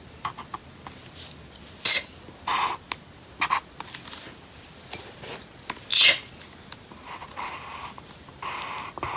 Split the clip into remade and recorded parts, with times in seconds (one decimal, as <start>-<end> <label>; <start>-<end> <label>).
0.0-9.2 recorded